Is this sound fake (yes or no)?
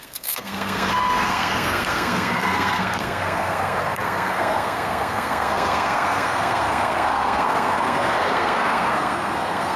yes